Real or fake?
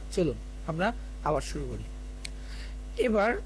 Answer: fake